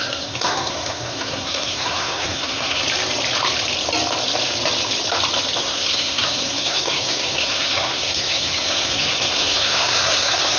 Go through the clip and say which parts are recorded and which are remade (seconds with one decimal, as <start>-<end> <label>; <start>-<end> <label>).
0.0-2.8 remade; 2.8-5.6 recorded; 5.6-10.6 remade